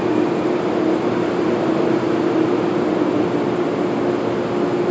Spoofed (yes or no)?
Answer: no